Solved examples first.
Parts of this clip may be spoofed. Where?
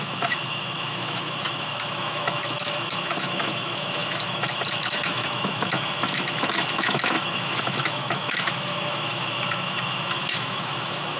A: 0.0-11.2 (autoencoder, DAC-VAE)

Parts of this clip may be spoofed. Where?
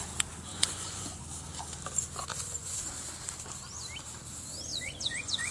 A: 0.5-1.2 (vocoder, Vocos); 2.3-2.8; 4.7-5.5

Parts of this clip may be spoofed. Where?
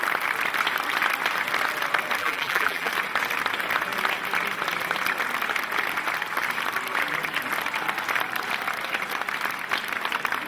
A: 2.2-2.9 (vocoder, BigVGAN v2)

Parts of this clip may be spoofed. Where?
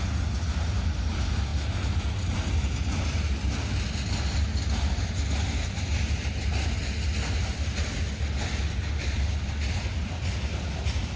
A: none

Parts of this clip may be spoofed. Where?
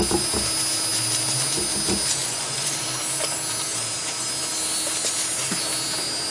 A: 2.2-2.7 (vocoder, Vocos)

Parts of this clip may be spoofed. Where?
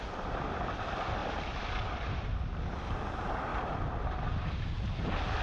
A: 1.2-2.6 (vocoder, BigVGAN v2)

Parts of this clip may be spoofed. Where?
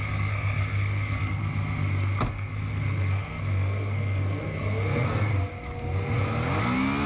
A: 0.0-1.4 (codec, SNAC); 2.3-5.3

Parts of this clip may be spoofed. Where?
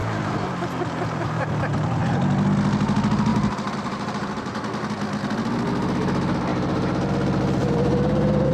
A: 0.0-2.0 (vocoder, BigVGAN v2); 3.3-4.9; 6.5-7.1; 7.6-8.5